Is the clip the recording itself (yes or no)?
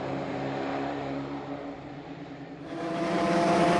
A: no